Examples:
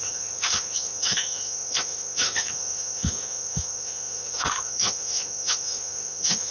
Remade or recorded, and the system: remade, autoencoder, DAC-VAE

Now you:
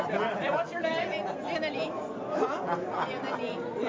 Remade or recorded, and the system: recorded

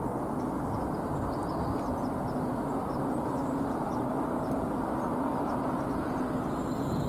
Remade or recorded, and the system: recorded